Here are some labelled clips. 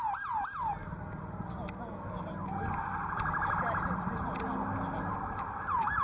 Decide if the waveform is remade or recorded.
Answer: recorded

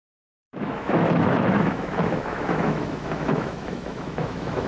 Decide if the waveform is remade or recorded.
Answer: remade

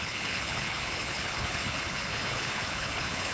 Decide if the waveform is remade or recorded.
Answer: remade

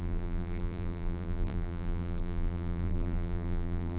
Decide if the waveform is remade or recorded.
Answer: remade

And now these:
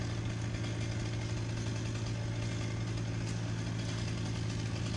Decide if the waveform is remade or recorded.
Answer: recorded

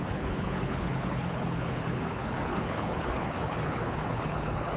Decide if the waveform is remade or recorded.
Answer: remade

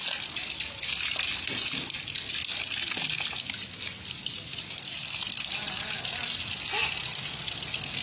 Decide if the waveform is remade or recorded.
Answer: recorded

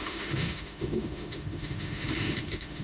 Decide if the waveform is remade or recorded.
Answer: remade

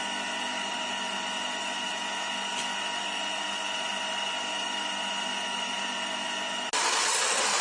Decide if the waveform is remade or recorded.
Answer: recorded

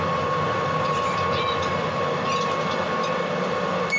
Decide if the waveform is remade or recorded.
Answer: remade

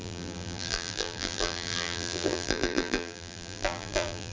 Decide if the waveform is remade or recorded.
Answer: remade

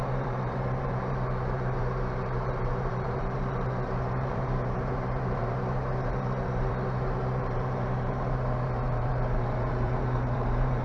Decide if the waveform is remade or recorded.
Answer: remade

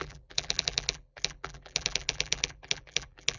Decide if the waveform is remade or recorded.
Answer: remade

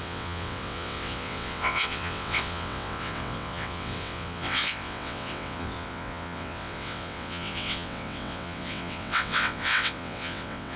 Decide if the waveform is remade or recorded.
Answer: remade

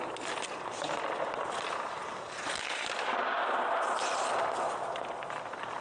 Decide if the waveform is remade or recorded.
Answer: recorded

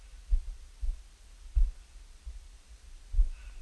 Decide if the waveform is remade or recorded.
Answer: recorded